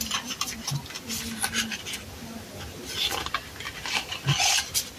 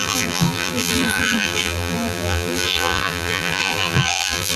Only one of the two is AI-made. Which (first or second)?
second